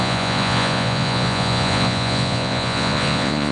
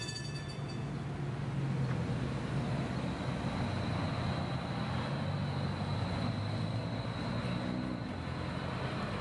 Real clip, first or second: second